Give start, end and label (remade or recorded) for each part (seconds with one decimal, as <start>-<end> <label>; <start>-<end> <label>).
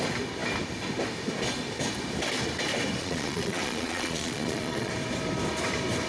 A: 0.0-3.0 recorded; 3.0-4.9 remade; 4.9-6.1 recorded